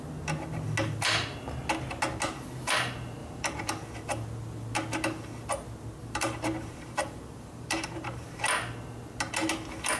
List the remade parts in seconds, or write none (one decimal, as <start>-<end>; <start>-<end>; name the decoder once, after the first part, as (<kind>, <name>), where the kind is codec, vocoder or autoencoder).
3.2-3.7 (vocoder, BigVGAN v2); 6.0-8.4